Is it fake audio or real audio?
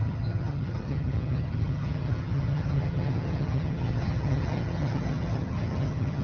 fake